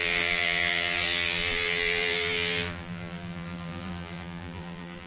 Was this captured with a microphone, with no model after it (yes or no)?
no